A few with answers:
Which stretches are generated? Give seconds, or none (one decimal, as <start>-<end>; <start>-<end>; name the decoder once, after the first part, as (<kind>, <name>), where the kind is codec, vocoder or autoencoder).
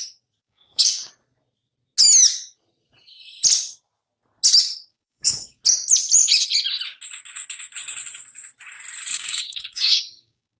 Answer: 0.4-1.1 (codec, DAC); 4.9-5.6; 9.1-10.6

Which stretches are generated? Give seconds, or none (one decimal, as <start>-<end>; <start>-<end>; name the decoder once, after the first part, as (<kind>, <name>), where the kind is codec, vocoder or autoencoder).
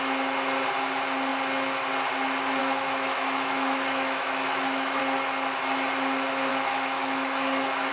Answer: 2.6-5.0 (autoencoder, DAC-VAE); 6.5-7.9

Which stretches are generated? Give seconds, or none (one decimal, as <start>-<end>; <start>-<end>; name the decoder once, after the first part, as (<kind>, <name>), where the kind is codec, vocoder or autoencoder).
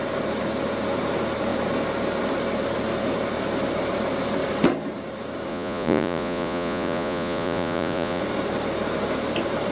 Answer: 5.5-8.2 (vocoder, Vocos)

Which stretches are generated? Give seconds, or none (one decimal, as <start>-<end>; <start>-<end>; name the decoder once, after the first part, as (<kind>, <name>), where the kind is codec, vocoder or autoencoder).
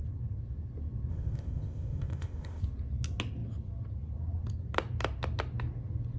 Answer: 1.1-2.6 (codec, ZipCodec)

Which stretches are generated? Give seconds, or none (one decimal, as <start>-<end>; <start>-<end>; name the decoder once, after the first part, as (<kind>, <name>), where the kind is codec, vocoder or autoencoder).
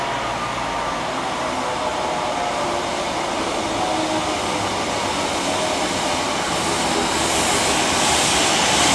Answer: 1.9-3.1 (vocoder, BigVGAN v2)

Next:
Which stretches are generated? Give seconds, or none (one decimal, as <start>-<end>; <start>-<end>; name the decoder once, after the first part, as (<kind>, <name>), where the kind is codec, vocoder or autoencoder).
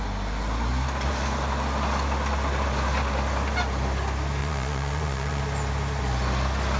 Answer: 4.4-5.4 (vocoder, Vocos)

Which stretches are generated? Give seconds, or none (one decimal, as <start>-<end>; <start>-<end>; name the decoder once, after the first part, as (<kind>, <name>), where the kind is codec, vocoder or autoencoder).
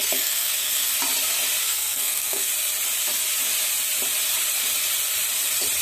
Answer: 0.0-0.9 (codec, SNAC); 1.6-2.5